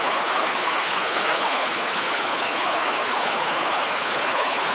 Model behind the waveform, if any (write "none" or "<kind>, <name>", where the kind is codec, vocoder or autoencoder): codec, HILCodec